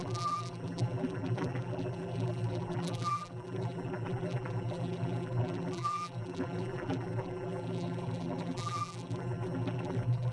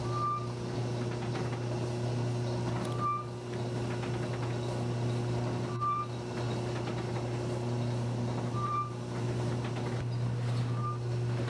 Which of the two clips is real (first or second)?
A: second